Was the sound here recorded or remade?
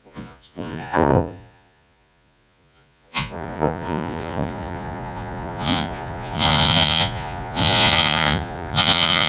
remade